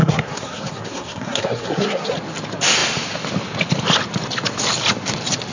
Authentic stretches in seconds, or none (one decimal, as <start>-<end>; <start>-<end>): 2.1-5.5